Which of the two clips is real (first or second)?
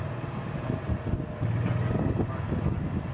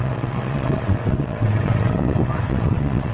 first